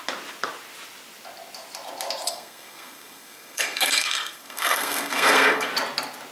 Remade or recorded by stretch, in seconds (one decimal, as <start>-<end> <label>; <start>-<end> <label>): 0.0-2.3 recorded; 2.3-5.7 remade; 5.7-6.3 recorded